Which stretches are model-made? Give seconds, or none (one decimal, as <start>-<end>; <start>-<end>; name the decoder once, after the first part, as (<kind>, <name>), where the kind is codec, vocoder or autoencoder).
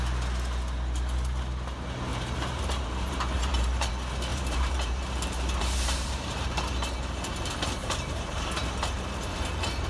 2.1-3.9 (vocoder, BigVGAN v2); 4.3-6.6; 7.8-8.4